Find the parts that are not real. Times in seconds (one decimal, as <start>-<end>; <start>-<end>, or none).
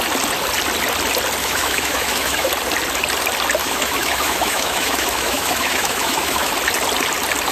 1.4-2.5; 3.6-6.5